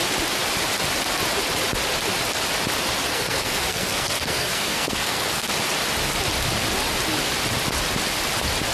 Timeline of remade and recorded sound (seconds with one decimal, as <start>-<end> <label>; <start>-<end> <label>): 0.0-3.1 recorded; 3.1-5.5 remade; 5.5-8.7 recorded